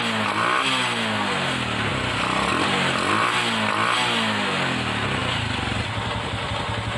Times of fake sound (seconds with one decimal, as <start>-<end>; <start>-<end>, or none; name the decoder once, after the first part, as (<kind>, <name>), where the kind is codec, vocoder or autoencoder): none